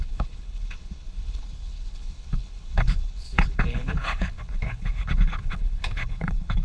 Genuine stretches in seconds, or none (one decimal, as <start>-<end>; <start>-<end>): none